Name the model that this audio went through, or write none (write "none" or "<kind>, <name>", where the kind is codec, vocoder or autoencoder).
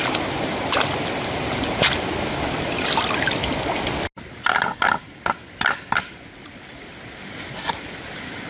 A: none